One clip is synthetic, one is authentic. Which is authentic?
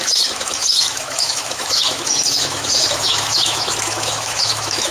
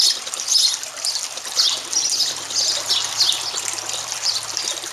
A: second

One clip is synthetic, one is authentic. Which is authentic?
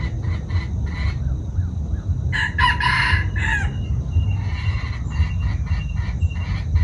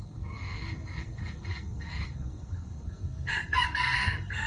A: first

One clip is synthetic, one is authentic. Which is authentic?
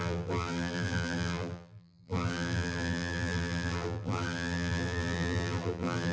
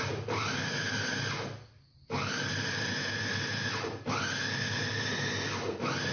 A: second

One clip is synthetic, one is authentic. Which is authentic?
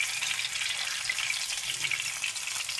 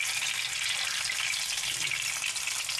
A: second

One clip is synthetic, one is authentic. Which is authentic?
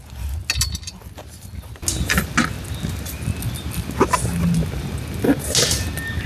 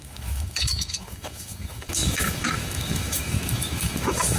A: first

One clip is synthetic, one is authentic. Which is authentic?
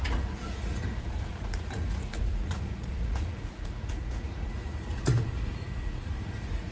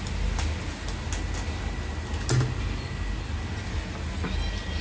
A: second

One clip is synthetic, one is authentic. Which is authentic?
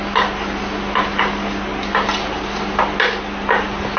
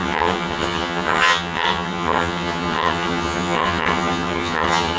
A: first